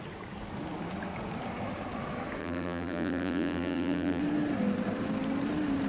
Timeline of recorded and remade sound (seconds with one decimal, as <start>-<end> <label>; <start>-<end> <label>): 0.0-2.4 recorded; 2.4-4.2 remade; 4.2-5.9 recorded